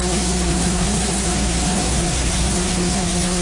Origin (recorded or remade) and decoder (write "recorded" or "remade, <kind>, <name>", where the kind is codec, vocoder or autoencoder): remade, codec, SNAC